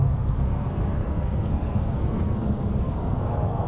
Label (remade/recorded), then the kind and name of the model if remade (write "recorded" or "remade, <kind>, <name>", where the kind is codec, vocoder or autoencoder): remade, codec, SNAC